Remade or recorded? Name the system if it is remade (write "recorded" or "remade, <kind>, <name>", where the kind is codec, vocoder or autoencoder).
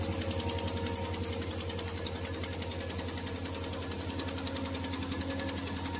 recorded